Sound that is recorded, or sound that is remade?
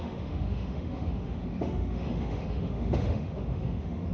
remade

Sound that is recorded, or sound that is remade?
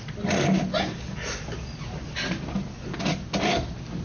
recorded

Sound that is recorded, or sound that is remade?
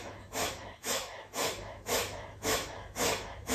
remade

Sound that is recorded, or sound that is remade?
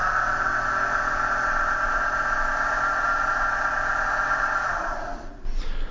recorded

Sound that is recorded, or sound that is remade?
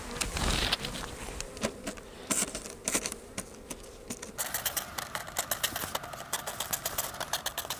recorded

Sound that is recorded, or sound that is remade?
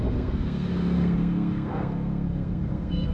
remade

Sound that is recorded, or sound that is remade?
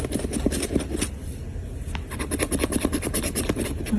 recorded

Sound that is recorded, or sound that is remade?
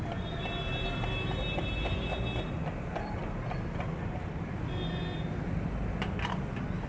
recorded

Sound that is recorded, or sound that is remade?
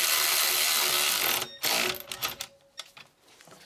recorded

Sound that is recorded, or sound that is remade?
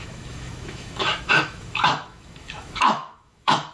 remade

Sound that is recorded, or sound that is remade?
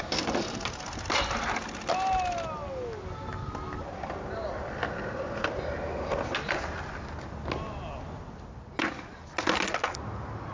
recorded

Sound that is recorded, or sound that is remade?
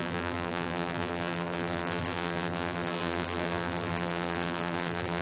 remade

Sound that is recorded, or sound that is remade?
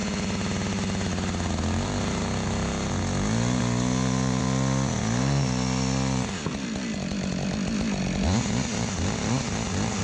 recorded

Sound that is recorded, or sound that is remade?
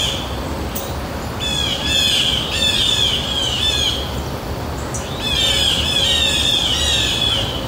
recorded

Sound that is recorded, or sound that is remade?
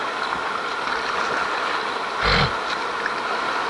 recorded